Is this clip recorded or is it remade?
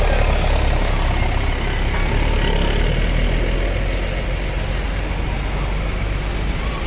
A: recorded